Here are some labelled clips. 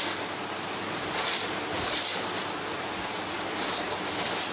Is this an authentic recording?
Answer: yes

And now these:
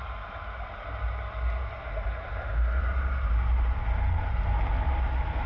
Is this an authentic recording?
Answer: yes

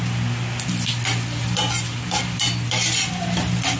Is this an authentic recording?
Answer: yes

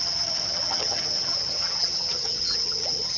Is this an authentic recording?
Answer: no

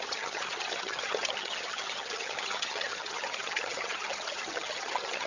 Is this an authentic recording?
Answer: no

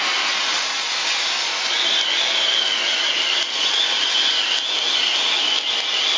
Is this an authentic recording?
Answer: yes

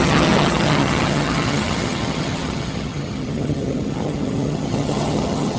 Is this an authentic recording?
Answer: no